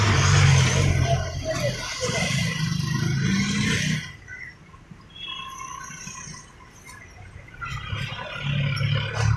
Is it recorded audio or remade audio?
recorded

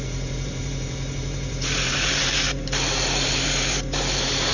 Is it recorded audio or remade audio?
remade